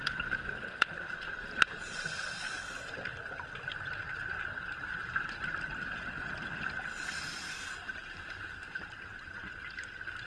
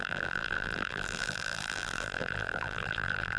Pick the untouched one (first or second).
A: first